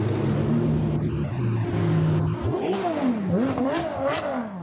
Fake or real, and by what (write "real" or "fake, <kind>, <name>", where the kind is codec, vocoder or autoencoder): real